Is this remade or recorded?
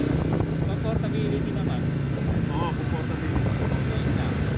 recorded